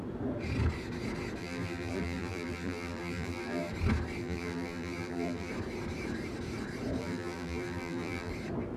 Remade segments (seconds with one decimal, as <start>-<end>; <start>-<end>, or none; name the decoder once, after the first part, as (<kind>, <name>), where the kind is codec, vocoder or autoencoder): 1.4-3.7 (vocoder, BigVGAN v2); 4.2-5.5; 7.0-8.3